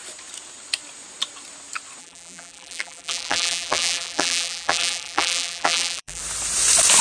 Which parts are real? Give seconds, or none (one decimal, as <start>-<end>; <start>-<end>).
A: 0.0-2.0; 6.2-7.0